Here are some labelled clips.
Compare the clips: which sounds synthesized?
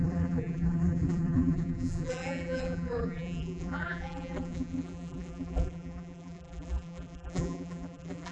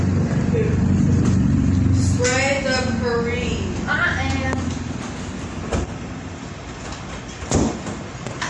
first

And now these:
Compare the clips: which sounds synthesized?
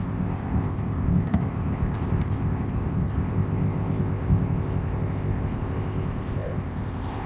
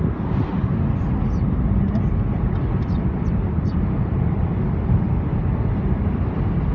first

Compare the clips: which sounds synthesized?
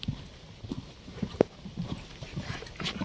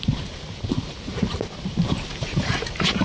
second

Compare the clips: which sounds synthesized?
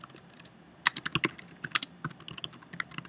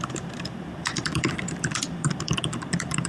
second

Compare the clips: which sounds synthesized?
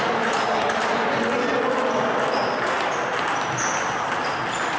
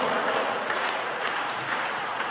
second